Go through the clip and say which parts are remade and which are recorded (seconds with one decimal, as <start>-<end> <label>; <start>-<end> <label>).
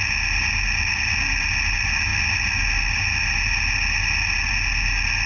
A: 0.0-5.3 recorded